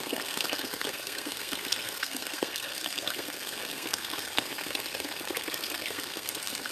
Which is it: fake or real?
fake